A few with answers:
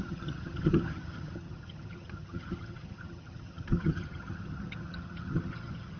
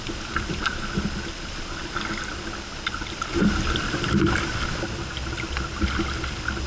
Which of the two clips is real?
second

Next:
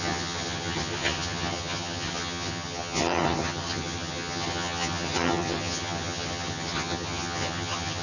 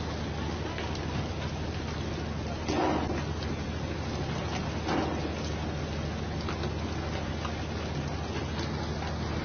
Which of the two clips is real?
second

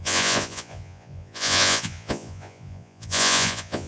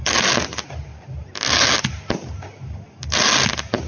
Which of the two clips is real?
second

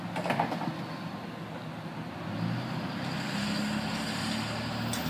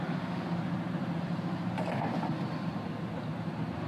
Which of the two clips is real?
first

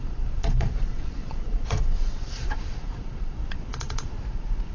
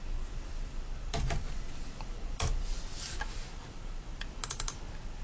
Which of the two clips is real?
second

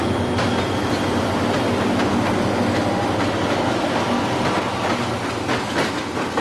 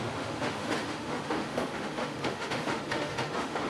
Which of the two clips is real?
first